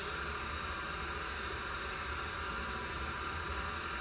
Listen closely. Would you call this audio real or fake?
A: real